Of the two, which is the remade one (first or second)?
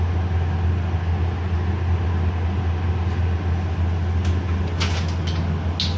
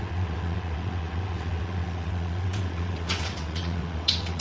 second